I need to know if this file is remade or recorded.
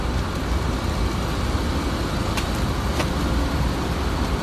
recorded